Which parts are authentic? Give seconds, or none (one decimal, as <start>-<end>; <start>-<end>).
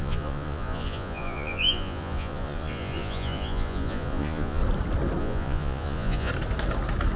4.6-5.2; 6.3-7.2